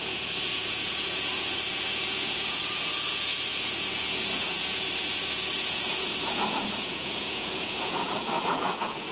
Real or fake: fake